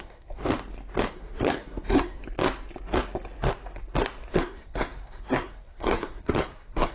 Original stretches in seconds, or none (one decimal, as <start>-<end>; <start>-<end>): 0.4-1.1; 2.2-4.3